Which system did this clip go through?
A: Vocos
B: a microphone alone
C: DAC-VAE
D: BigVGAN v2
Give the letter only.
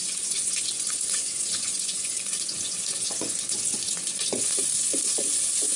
A